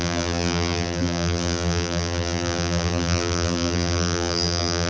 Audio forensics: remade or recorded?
remade